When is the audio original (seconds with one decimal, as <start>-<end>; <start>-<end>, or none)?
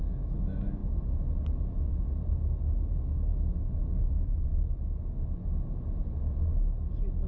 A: 0.8-3.0; 4.5-7.3